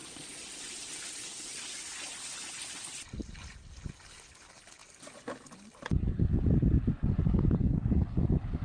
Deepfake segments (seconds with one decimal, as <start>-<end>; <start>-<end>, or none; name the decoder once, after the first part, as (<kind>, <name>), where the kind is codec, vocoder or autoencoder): 0.0-0.7 (vocoder, Vocos)